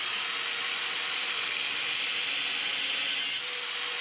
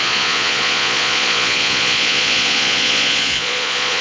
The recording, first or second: first